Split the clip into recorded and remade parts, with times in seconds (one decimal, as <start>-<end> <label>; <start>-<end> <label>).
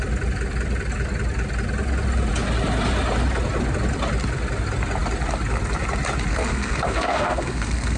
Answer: 0.0-6.3 recorded; 6.3-8.0 remade